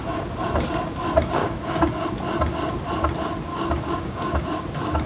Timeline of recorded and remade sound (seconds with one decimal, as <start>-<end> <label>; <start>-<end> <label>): 0.0-1.4 recorded; 1.4-2.1 remade; 2.1-3.5 recorded; 3.5-4.4 remade; 4.4-5.1 recorded